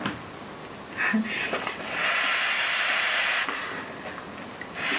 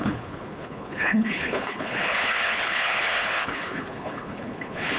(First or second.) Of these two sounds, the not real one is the second